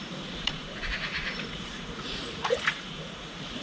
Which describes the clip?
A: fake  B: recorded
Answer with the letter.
A